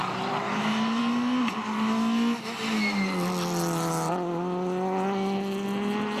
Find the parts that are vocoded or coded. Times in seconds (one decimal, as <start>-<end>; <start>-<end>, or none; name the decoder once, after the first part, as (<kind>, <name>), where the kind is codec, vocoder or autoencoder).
none